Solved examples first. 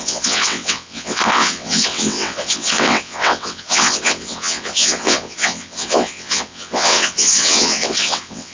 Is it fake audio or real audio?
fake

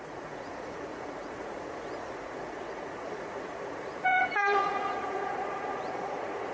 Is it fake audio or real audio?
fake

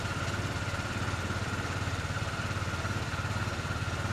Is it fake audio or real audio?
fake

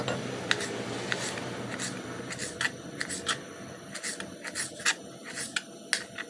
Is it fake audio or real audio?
real